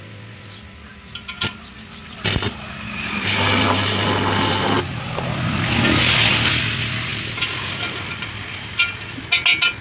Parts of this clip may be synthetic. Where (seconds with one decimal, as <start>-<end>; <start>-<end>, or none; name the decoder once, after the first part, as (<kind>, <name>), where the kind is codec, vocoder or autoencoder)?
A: none